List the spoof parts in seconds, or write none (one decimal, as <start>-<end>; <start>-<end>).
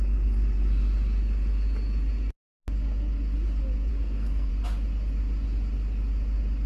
3.9-4.5